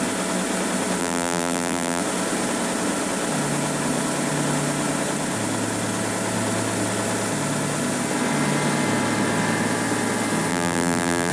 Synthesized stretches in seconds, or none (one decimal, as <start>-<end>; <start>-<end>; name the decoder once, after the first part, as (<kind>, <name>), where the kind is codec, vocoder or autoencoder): 1.0-2.0 (vocoder, BigVGAN v2); 10.5-11.3